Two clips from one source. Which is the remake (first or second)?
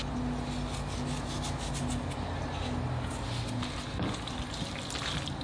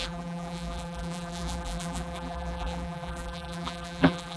second